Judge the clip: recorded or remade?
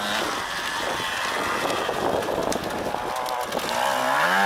recorded